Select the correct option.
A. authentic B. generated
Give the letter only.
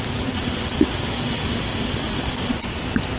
A